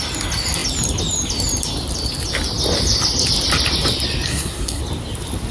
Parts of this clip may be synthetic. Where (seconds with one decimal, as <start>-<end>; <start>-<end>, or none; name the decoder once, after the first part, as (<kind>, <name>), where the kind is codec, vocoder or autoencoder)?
4.3-4.8 (codec, SNAC)